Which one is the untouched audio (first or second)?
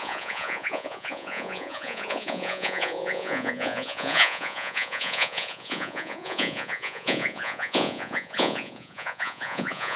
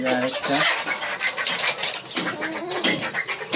second